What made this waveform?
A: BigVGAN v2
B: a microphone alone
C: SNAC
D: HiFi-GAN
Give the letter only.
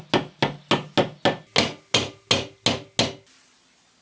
B